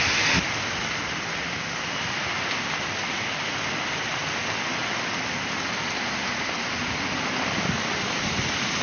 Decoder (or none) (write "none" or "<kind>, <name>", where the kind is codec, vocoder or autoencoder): none